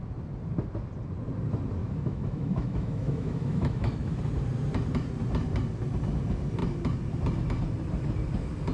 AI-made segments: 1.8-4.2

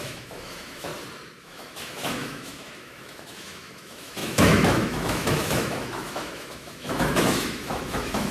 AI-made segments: 0.0-0.9; 1.4-8.3

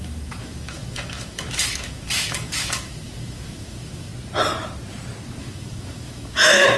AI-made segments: 0.0-4.1; 5.4-6.8

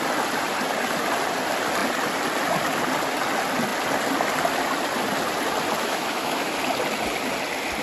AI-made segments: 5.8-6.5

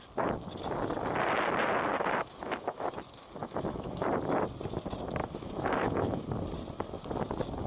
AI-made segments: 1.9-2.9; 3.4-4.0; 5.2-6.2